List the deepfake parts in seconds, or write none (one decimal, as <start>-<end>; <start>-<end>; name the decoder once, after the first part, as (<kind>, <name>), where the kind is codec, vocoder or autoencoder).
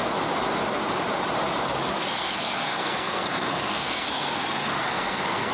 2.0-5.5 (codec, SNAC)